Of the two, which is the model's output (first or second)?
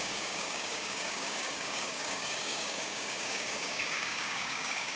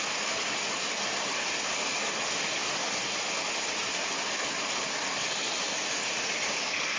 first